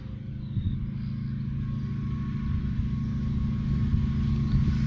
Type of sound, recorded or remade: recorded